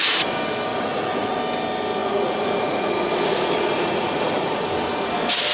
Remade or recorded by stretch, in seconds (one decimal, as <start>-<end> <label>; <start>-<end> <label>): 0.0-0.7 recorded; 0.7-1.4 remade; 1.4-2.0 recorded; 2.0-4.6 remade; 4.6-5.5 recorded